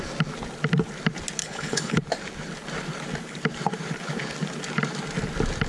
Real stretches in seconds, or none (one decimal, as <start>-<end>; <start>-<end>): 0.0-1.4; 2.0-5.7